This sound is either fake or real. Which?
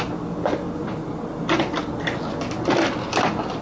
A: real